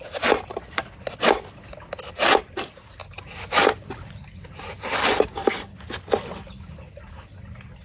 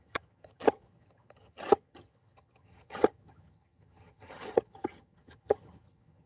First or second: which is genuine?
first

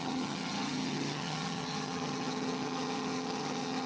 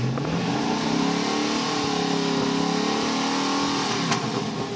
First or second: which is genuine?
second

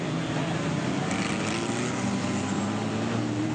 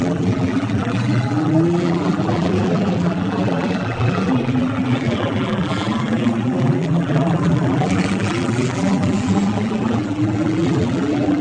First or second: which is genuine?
first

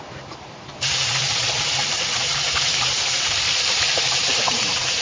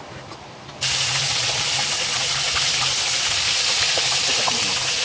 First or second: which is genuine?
second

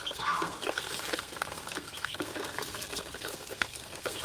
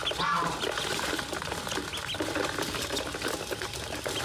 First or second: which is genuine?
second